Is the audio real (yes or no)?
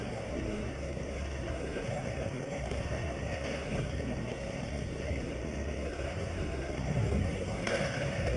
no